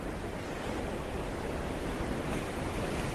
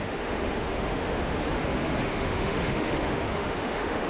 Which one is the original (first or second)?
first